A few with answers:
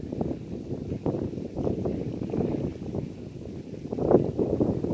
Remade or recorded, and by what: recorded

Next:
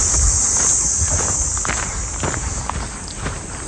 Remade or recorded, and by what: recorded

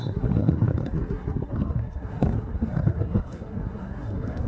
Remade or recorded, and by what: remade, codec, SNAC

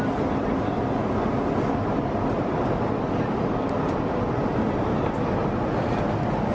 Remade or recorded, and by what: recorded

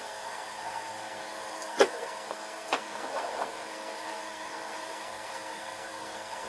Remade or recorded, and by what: remade, codec, SNAC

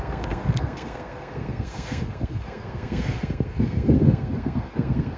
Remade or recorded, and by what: remade, codec, SNAC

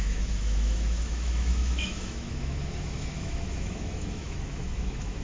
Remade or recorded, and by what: remade, autoencoder, DAC-VAE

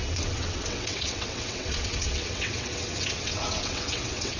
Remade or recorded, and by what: remade, vocoder, WaveNeXt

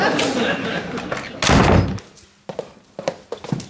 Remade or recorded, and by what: recorded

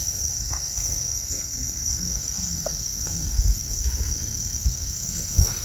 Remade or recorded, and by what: remade, codec, SNAC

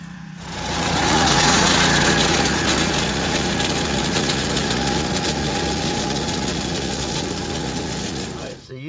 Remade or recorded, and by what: remade, vocoder, Vocos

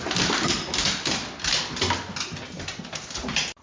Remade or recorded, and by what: recorded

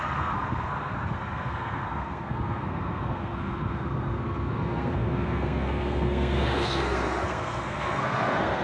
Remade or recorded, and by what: remade, codec, SNAC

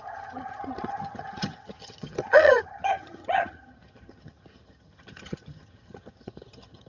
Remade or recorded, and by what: remade, vocoder, HiFi-GAN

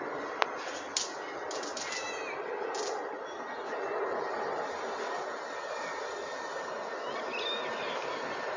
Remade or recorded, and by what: recorded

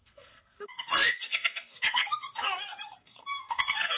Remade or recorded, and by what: remade, codec, SNAC